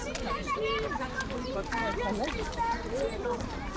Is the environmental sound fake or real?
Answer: fake